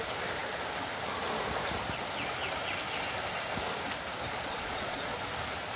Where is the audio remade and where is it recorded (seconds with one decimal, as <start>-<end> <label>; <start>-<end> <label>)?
0.0-4.5 recorded; 4.5-5.2 remade; 5.2-5.8 recorded

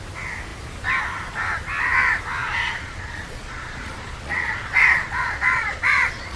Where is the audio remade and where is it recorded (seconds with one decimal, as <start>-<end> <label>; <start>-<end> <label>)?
0.0-2.4 recorded; 2.4-6.4 remade

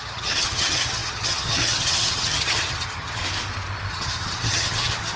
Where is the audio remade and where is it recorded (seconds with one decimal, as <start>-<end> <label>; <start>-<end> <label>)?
0.0-3.2 remade; 3.2-3.9 recorded; 3.9-5.2 remade